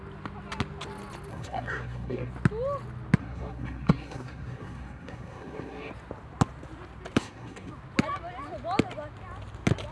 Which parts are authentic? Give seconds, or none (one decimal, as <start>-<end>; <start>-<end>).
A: 0.0-1.3; 2.3-3.2; 5.9-7.2; 7.7-9.9